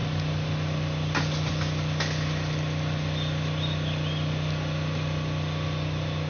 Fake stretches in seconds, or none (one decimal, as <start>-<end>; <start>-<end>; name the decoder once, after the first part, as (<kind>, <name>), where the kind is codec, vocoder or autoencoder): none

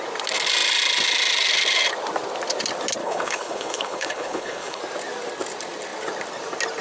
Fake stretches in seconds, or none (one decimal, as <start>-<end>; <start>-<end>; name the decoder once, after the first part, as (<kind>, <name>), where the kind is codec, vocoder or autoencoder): 3.0-4.8 (codec, HILCodec)

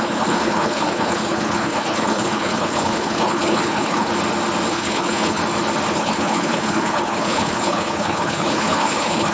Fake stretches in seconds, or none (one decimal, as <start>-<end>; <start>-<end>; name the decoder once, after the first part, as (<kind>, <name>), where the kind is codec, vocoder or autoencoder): 0.0-4.1 (codec, HILCodec); 4.7-5.4; 5.9-9.3

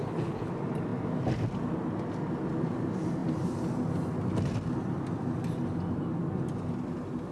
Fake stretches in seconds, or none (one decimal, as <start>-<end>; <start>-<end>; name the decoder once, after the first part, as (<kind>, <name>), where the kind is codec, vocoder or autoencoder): 0.0-0.5 (codec, HILCodec)